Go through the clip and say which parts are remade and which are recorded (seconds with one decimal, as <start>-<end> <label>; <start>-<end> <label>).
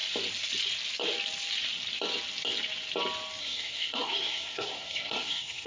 0.0-3.4 recorded; 3.4-5.7 remade